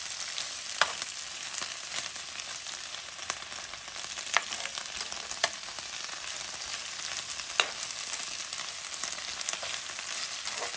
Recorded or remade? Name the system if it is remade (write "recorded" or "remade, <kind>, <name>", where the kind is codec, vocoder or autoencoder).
recorded